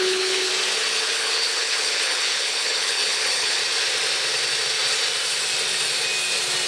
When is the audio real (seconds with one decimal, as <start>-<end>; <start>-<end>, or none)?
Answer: 0.5-1.0; 3.6-6.7